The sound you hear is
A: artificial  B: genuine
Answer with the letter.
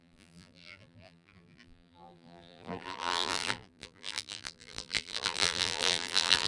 A